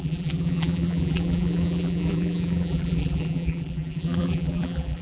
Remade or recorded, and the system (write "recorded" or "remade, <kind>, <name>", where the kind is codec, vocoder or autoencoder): remade, vocoder, BigVGAN v2